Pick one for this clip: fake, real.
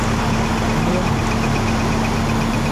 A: real